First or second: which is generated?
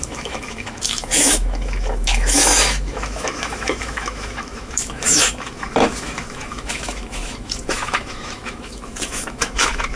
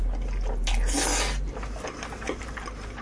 first